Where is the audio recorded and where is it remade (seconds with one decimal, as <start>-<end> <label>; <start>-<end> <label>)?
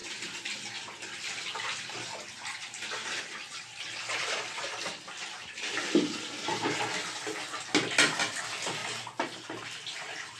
0.0-10.4 recorded